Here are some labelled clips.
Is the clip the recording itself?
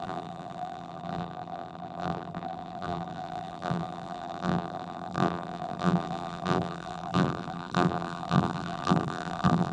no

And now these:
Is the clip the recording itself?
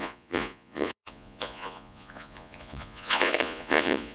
no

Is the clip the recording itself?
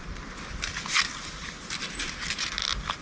yes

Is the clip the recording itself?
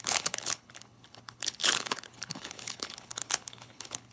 no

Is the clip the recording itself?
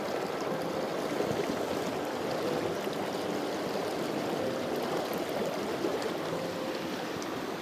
yes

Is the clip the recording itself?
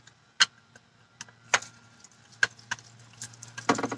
yes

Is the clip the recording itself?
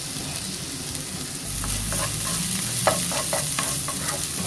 yes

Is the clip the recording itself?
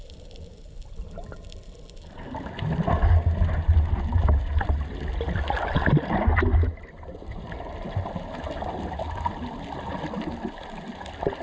yes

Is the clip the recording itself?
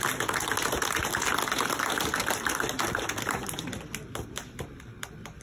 yes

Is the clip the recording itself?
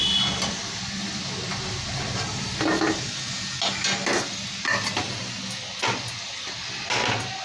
yes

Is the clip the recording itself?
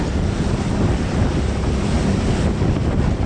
yes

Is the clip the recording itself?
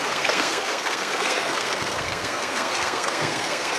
no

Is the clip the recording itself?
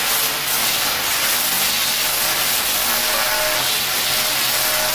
yes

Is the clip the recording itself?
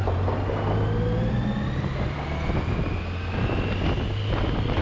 yes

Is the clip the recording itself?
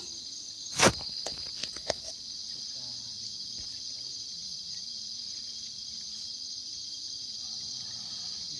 no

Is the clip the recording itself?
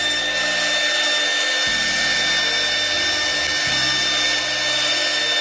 yes